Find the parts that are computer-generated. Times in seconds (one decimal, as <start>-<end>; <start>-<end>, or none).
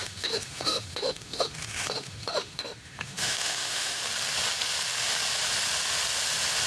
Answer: 0.0-4.0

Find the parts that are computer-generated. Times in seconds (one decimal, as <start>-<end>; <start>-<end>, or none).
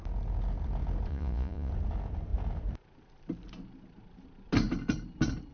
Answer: 1.1-1.7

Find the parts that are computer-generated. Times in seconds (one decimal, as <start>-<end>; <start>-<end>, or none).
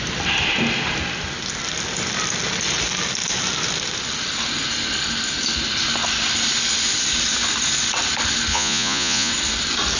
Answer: 8.5-9.3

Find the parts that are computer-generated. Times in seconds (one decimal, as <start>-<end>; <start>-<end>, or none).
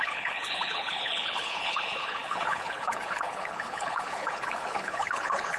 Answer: 0.0-5.6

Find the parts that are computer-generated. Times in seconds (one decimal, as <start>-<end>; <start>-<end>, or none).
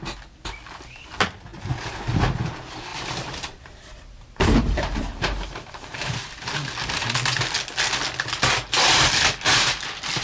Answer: 1.5-2.0; 2.9-6.2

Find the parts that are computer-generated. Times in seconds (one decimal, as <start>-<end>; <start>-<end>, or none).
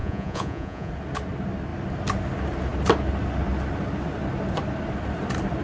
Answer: 0.0-0.9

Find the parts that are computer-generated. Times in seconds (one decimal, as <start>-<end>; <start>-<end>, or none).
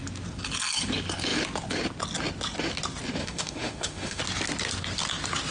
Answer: 3.2-4.2